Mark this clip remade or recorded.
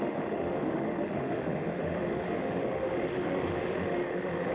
remade